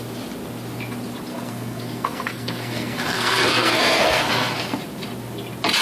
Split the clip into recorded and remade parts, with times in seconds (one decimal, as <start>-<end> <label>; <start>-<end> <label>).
0.0-1.3 recorded; 1.3-4.8 remade; 4.8-5.8 recorded